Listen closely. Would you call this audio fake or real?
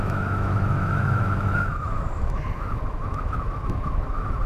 fake